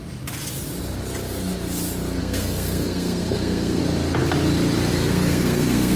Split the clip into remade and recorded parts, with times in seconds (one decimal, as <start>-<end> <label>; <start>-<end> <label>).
0.0-2.2 recorded; 2.2-3.8 remade; 3.8-4.9 recorded; 4.9-6.0 remade